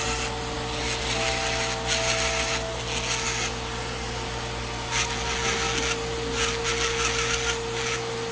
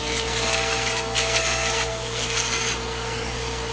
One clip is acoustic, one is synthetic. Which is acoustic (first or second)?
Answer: first